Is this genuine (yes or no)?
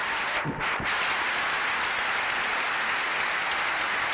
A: yes